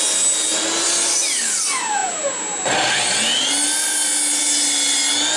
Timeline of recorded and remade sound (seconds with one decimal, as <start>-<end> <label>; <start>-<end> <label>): 0.0-5.4 recorded